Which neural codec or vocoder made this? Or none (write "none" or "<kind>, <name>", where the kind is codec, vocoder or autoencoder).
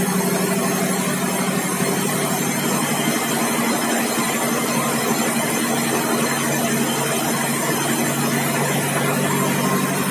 none